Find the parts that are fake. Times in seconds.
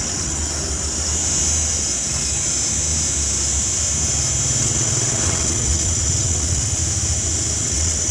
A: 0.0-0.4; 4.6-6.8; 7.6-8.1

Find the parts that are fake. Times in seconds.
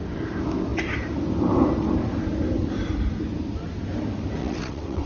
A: 4.4-5.1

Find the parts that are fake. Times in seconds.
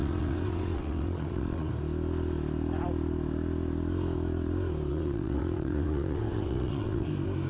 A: 0.0-1.7; 4.9-7.1